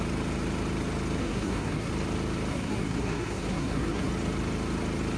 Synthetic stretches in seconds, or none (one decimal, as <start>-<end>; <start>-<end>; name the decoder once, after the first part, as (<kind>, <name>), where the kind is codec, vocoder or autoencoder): 1.2-1.9 (codec, SNAC); 2.5-4.1